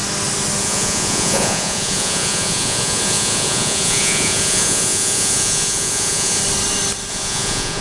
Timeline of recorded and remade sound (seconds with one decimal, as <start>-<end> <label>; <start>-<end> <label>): 0.0-0.6 recorded; 0.6-6.4 remade; 6.4-7.1 recorded; 7.1-7.8 remade